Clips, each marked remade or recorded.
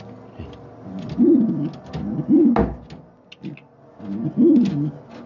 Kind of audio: recorded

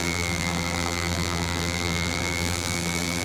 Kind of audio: remade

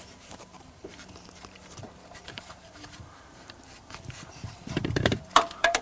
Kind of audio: remade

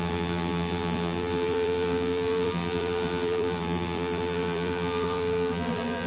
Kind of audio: remade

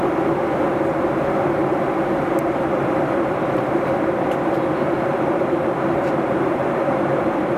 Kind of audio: remade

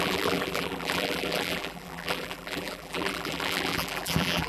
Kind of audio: remade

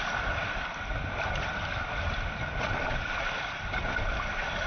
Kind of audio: remade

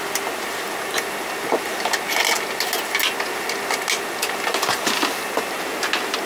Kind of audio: recorded